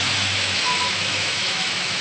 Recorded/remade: remade